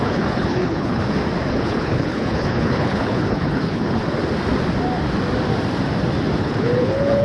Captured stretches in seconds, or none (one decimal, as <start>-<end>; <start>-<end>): 1.0-1.5; 4.0-6.4